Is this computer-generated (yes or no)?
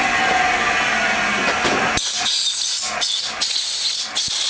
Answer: no